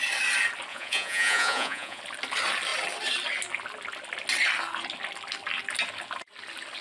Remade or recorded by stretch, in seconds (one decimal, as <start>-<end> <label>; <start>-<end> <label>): 0.0-0.7 recorded; 0.7-2.0 remade; 2.0-6.8 recorded